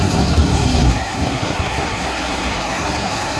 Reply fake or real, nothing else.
fake